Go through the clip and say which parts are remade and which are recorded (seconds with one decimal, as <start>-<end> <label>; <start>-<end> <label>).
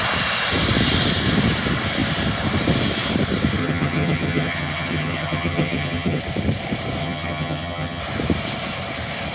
0.0-3.6 recorded; 3.6-6.2 remade; 6.2-7.0 recorded; 7.0-8.0 remade; 8.0-9.3 recorded